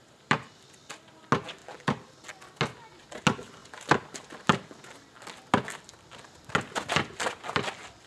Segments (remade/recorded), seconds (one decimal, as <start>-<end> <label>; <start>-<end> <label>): 0.0-0.5 remade; 0.5-1.6 recorded; 1.6-2.2 remade; 2.2-8.1 recorded